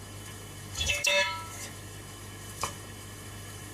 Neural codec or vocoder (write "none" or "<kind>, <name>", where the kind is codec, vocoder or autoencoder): autoencoder, DAC-VAE